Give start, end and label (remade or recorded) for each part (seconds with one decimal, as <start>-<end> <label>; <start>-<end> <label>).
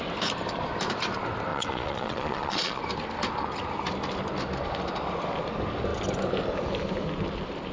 0.0-1.5 recorded; 1.5-2.8 remade; 2.8-7.7 recorded